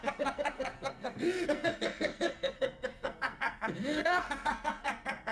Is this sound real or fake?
fake